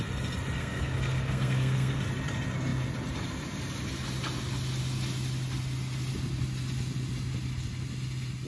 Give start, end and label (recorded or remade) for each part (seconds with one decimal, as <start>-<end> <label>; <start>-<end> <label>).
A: 0.0-0.6 recorded; 0.6-2.0 remade; 2.0-8.5 recorded